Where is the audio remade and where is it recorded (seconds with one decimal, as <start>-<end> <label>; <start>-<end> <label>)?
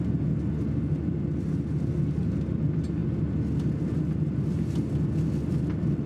0.0-6.1 recorded